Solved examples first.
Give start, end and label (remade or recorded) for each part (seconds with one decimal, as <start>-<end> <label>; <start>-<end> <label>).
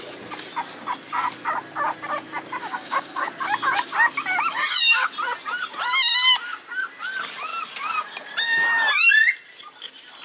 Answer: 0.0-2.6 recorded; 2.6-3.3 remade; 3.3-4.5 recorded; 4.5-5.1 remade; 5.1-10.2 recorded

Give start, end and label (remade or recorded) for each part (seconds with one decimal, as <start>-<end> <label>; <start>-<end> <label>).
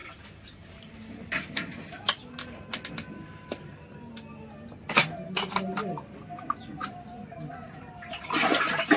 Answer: 0.0-9.0 recorded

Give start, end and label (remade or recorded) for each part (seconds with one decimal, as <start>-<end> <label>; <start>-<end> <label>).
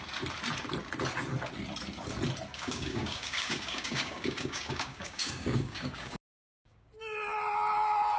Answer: 0.0-2.5 recorded; 2.5-6.9 remade; 6.9-8.2 recorded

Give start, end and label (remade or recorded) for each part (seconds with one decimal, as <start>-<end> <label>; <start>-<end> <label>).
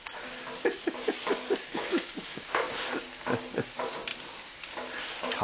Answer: 0.0-1.2 recorded; 1.2-2.6 remade; 2.6-5.4 recorded